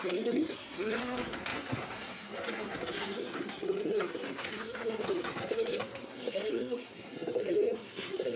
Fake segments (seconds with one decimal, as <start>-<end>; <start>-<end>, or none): 0.0-8.4